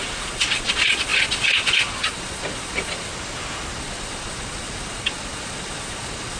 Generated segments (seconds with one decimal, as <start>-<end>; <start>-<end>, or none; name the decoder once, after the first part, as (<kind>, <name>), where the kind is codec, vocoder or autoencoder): 0.0-3.1 (vocoder, Vocos); 3.8-6.4